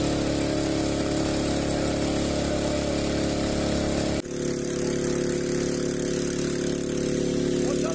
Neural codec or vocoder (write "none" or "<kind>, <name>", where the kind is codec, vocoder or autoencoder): none